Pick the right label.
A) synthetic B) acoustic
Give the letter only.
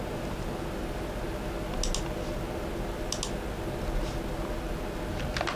B